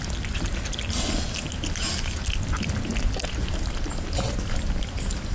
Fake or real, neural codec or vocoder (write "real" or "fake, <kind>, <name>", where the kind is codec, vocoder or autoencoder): real